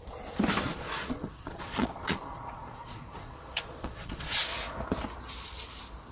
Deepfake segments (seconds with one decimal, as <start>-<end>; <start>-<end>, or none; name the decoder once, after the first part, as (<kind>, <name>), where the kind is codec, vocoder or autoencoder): 0.7-4.4 (vocoder, Vocos)